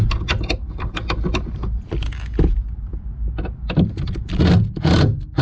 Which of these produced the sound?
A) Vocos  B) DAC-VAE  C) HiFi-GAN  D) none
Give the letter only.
D